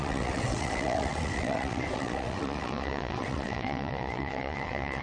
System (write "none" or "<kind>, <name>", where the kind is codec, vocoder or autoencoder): vocoder, WaveNeXt